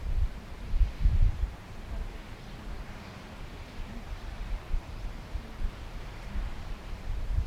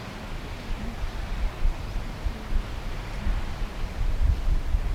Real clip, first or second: second